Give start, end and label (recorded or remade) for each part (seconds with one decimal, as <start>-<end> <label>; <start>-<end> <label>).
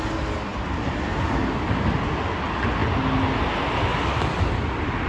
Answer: 0.0-5.1 recorded